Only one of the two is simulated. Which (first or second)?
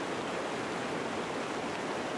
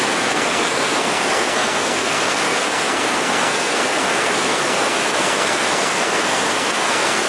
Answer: second